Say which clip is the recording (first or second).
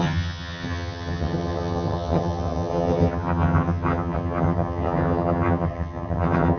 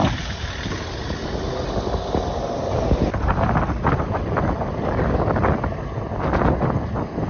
second